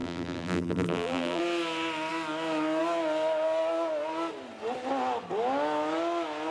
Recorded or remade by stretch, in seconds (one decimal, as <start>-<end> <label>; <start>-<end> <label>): 0.0-1.4 remade; 1.4-6.5 recorded